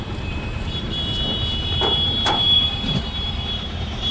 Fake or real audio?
fake